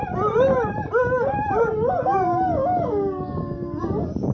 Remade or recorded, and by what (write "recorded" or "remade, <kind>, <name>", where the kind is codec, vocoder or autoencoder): recorded